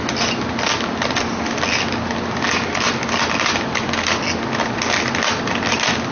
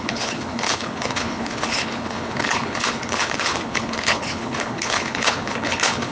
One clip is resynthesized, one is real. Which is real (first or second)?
first